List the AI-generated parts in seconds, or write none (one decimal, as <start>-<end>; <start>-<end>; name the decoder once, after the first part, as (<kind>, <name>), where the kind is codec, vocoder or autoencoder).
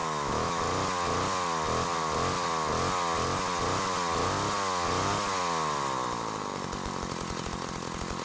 0.0-0.6 (autoencoder, DAC-VAE)